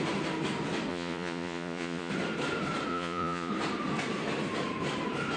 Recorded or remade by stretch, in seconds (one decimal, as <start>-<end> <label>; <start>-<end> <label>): 0.0-0.9 recorded; 0.9-2.1 remade; 2.1-2.9 recorded; 2.9-3.5 remade; 3.5-5.4 recorded